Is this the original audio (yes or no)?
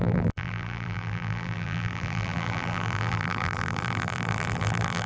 no